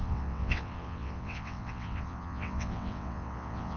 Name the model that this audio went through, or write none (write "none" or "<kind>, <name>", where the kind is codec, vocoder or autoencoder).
vocoder, WaveNeXt